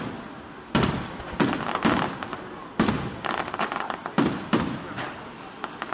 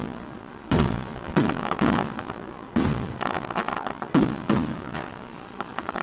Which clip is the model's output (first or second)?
second